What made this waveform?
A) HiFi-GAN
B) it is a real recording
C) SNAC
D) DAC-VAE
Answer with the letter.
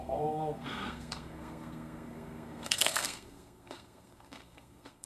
C